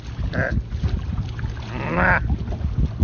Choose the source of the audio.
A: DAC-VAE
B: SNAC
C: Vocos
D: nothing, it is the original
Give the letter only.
D